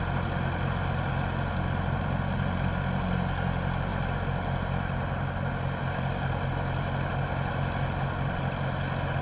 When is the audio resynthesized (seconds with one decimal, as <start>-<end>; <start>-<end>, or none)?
none